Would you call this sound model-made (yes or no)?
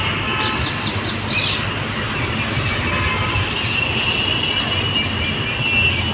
no